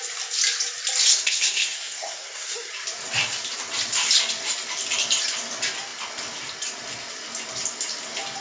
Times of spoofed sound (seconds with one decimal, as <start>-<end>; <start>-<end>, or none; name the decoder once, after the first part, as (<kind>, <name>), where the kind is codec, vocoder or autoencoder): 1.1-2.7 (codec, SNAC)